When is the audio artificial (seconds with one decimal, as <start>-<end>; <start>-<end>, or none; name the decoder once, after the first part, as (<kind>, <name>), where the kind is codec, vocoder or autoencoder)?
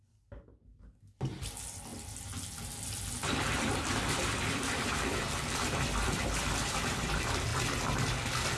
1.9-7.1 (vocoder, BigVGAN v2)